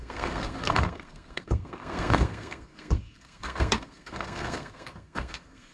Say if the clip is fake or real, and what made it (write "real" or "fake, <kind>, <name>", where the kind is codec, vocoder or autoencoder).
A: fake, codec, SNAC